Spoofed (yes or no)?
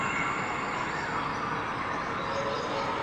no